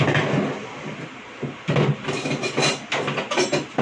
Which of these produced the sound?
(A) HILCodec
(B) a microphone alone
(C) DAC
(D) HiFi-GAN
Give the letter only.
B